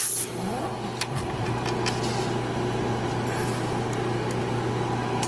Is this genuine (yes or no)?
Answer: yes